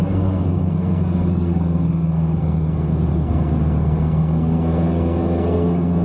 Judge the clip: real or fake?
fake